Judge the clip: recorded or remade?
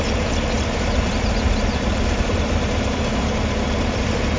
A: remade